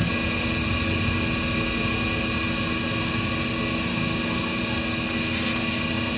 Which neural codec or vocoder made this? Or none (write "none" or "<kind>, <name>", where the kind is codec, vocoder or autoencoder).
none